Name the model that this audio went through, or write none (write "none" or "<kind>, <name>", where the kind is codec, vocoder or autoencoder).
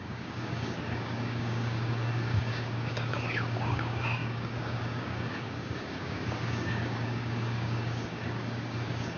codec, DAC